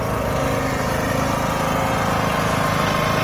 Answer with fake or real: real